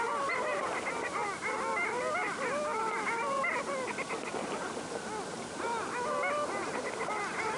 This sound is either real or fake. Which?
real